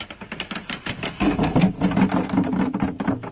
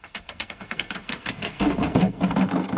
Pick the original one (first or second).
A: first